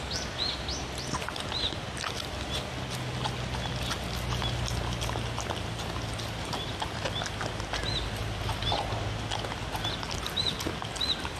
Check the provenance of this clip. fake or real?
real